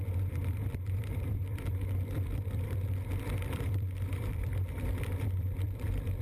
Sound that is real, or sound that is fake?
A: fake